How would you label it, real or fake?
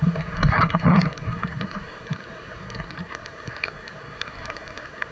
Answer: fake